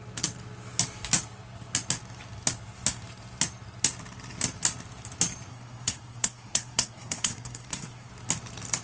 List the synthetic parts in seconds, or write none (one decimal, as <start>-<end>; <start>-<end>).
5.5-8.1